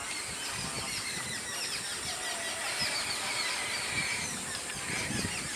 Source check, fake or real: real